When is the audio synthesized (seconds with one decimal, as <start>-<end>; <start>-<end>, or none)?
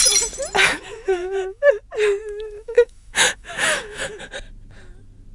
0.6-1.7; 2.2-4.3